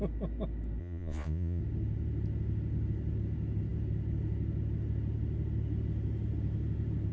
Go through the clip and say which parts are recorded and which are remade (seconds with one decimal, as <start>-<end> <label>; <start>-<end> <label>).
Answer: 0.0-0.8 recorded; 0.8-1.6 remade; 1.6-7.1 recorded